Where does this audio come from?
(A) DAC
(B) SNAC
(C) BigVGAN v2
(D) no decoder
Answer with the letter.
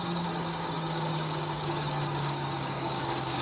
A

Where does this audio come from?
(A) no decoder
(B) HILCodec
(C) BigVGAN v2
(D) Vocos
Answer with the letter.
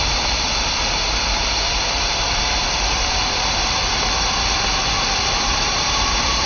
C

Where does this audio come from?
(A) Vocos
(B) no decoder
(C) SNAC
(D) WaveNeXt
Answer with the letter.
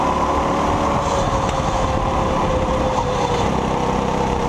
B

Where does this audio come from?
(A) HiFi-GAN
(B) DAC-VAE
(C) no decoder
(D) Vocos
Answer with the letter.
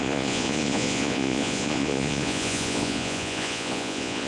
D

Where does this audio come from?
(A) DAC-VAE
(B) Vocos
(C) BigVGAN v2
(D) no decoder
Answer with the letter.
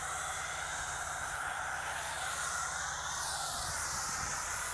C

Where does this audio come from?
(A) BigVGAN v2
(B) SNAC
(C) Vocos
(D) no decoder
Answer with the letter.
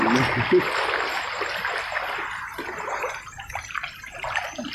D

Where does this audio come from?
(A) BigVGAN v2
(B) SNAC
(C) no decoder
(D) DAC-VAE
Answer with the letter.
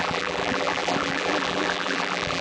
A